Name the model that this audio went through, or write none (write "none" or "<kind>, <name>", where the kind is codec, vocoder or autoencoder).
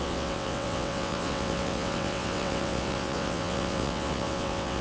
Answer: vocoder, WaveNeXt